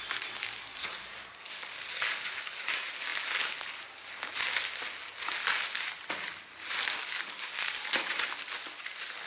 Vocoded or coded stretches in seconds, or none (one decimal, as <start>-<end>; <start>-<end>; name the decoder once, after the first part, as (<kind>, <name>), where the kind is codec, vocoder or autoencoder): 0.8-2.7 (codec, DAC); 7.0-7.9